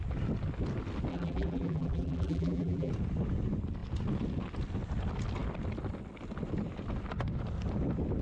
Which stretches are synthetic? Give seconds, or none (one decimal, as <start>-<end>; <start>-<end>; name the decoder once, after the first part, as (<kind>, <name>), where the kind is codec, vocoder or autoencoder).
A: 1.1-2.9 (vocoder, BigVGAN v2)